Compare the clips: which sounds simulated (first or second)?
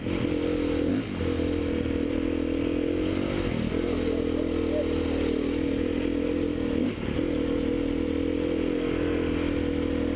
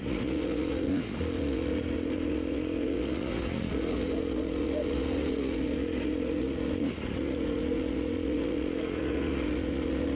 second